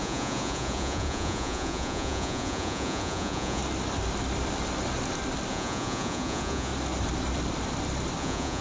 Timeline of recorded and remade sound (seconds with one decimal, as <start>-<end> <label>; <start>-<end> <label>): 0.0-3.6 remade; 3.6-5.5 recorded; 5.5-6.7 remade; 6.7-8.2 recorded; 8.2-8.6 remade